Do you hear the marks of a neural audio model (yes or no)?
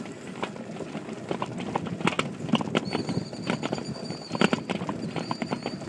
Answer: no